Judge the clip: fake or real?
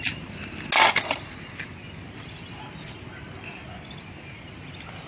real